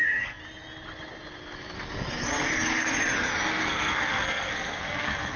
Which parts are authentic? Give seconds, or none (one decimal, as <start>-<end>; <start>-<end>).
0.4-3.6